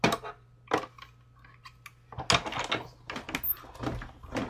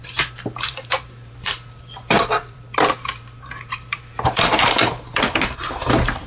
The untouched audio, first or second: first